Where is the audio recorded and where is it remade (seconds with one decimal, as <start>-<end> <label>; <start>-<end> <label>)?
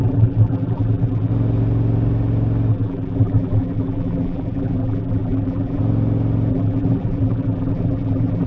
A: 0.0-1.3 remade; 1.3-2.7 recorded; 2.7-5.8 remade; 5.8-6.5 recorded; 6.5-8.5 remade